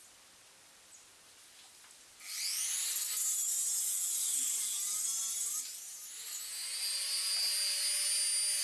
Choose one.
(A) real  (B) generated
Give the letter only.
A